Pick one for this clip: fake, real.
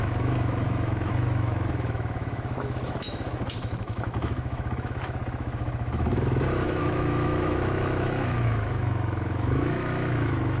fake